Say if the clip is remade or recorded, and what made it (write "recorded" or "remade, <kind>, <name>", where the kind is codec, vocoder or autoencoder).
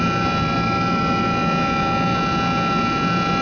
recorded